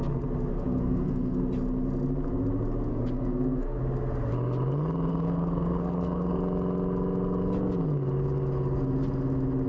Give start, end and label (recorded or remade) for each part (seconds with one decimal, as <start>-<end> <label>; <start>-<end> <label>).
0.0-0.5 recorded; 0.5-1.4 remade; 1.4-2.9 recorded; 2.9-3.8 remade; 3.8-5.1 recorded; 5.1-6.4 remade; 6.4-9.7 recorded